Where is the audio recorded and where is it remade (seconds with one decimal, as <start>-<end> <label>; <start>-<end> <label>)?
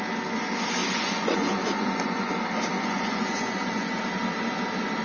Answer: 0.0-0.8 recorded; 0.8-2.3 remade; 2.3-2.7 recorded; 2.7-4.0 remade; 4.0-5.0 recorded